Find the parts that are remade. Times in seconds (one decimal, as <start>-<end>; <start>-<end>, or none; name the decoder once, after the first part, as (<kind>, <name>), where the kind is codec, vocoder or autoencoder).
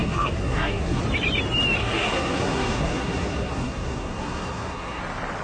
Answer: 0.0-1.0 (codec, SNAC); 1.8-5.0